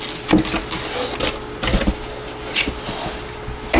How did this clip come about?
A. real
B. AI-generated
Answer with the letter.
A